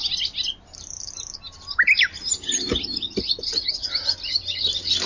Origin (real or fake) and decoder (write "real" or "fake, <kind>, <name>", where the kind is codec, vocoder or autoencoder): real